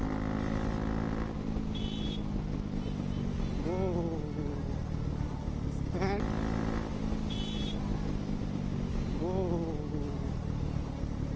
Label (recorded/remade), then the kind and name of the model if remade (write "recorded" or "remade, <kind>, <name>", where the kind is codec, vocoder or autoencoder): recorded